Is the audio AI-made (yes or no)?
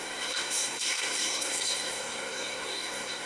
yes